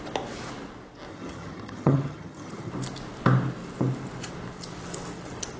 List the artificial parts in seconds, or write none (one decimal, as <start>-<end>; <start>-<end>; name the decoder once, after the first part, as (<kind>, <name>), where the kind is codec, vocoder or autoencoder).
1.1-2.7 (vocoder, HiFi-GAN)